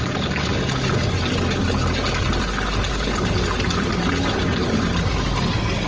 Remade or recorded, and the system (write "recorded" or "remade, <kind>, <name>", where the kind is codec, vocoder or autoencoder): recorded